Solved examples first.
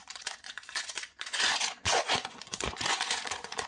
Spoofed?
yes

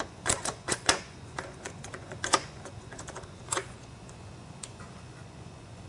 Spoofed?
yes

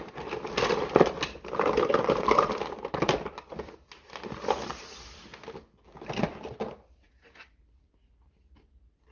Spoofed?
no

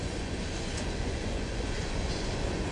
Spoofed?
yes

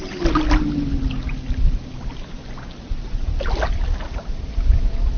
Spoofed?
no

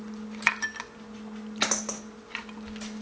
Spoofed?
no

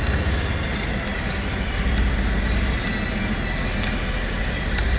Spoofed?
no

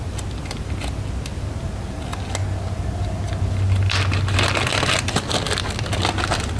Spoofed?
no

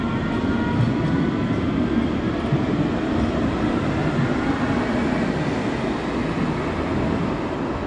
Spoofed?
no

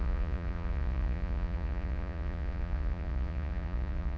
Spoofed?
yes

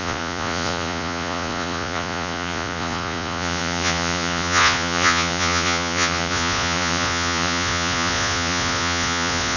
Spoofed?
yes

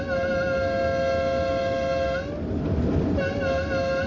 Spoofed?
no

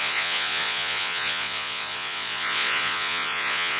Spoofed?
yes